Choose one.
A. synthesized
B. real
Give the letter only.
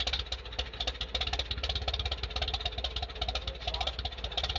B